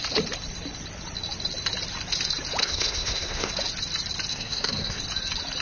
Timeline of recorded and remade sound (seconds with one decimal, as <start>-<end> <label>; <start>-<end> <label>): 0.0-2.6 recorded; 2.6-3.5 remade; 3.5-4.3 recorded; 4.3-5.0 remade; 5.0-5.6 recorded